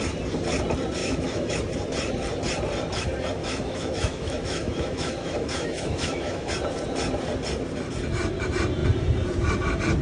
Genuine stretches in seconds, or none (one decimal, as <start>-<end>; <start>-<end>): 0.0-1.0; 1.6-3.4; 6.5-10.0